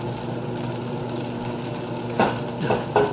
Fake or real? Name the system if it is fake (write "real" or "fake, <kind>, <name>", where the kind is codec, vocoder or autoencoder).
real